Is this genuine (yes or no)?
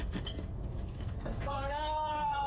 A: no